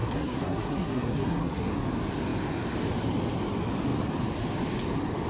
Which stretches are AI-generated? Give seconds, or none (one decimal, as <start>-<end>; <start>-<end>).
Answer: 0.0-1.7